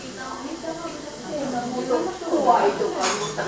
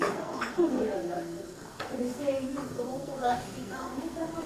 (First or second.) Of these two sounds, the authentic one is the first